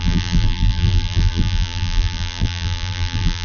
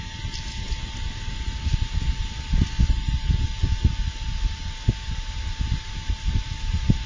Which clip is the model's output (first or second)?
first